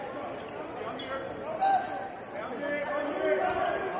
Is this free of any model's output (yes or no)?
yes